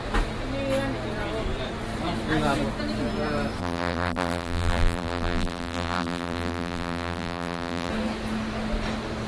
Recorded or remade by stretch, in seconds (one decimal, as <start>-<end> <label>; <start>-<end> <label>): 0.0-3.6 recorded; 3.6-7.9 remade; 7.9-9.3 recorded